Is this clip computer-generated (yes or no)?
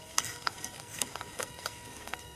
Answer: yes